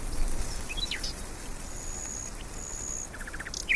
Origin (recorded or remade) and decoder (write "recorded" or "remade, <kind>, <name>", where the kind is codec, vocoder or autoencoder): recorded